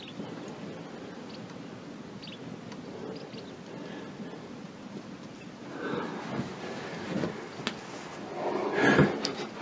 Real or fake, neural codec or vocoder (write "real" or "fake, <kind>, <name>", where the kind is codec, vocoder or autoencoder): real